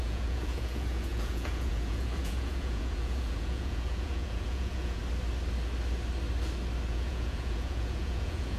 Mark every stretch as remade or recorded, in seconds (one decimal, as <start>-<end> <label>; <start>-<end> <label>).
0.0-5.0 remade; 5.0-6.9 recorded; 6.9-8.6 remade